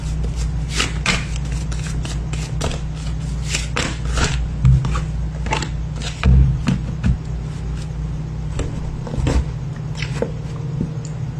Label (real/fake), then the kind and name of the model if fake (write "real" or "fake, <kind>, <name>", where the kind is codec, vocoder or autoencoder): real